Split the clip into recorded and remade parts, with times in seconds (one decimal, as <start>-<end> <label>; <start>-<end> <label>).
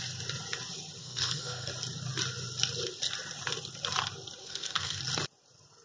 0.0-1.0 recorded; 1.0-1.7 remade; 1.7-4.4 recorded; 4.4-5.0 remade; 5.0-5.8 recorded